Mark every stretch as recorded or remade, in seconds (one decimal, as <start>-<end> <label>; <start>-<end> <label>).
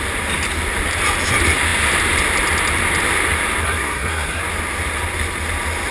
0.0-3.6 recorded; 3.6-4.4 remade; 4.4-5.9 recorded